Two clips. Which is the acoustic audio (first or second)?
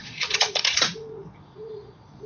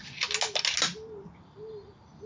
second